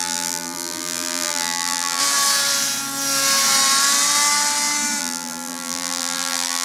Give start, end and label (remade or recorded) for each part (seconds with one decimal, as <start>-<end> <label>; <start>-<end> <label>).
0.0-2.0 remade; 2.0-5.0 recorded; 5.0-6.6 remade

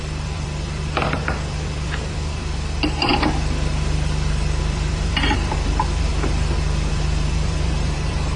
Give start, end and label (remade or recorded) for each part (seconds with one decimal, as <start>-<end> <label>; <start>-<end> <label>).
0.0-3.1 remade; 3.1-4.6 recorded; 4.6-6.1 remade; 6.1-6.9 recorded; 6.9-8.4 remade

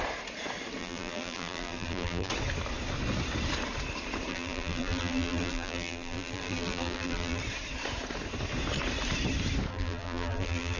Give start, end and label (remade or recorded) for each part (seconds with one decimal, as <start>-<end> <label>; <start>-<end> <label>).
0.0-0.8 recorded; 0.8-2.3 remade; 2.3-4.3 recorded; 4.3-7.4 remade; 7.4-9.7 recorded; 9.7-10.8 remade